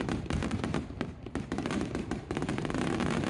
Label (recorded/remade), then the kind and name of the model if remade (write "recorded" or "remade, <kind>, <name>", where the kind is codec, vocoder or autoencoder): remade, vocoder, BigVGAN v2